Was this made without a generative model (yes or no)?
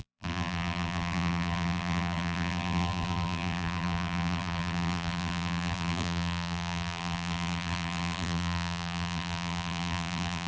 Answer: no